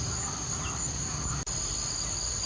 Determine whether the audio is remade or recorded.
recorded